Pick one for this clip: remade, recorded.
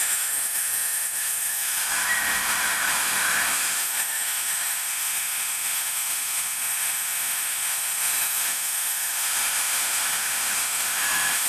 remade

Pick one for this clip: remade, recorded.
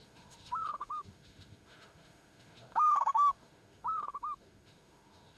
remade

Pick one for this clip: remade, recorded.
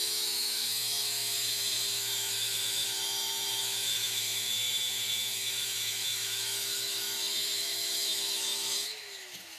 remade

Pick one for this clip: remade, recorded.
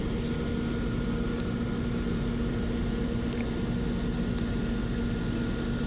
recorded